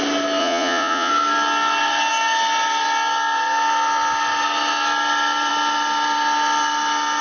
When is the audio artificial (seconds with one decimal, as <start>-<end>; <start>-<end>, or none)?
0.4-1.1